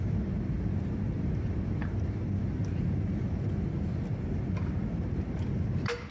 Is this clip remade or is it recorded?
remade